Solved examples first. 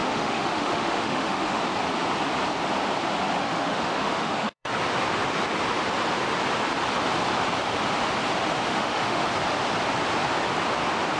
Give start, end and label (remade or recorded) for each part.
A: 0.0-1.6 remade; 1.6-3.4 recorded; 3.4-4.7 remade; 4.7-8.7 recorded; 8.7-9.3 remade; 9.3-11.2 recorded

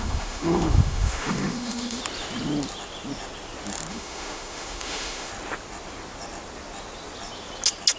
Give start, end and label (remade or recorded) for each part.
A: 0.0-2.0 remade; 2.0-3.9 recorded; 3.9-5.3 remade; 5.3-8.0 recorded

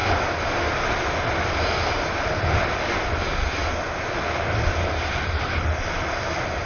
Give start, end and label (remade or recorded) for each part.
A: 0.0-6.7 recorded

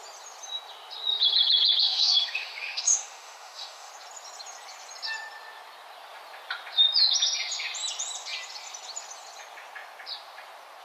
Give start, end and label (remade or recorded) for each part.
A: 0.0-1.8 recorded; 1.8-3.9 remade; 3.9-10.8 recorded

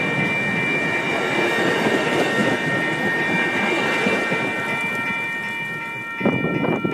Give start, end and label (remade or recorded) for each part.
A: 0.0-6.9 recorded